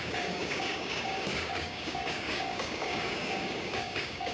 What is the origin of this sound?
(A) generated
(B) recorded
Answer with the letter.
A